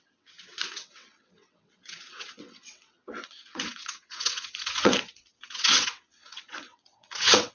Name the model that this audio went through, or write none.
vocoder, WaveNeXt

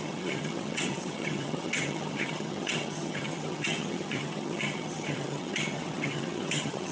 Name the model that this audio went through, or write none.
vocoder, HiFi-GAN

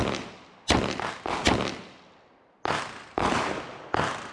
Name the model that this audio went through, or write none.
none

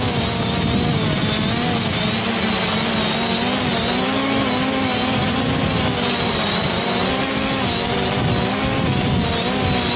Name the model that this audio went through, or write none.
none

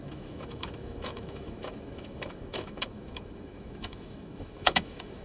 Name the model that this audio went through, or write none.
autoencoder, DAC-VAE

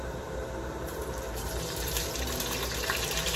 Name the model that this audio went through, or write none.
vocoder, BigVGAN v2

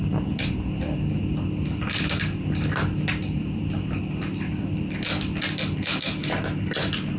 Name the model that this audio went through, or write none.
none